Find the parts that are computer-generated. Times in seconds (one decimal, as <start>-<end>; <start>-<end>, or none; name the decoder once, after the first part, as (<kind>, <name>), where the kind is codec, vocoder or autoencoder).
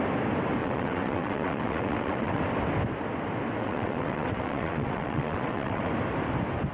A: 0.6-2.4 (vocoder, WaveNeXt); 3.6-5.9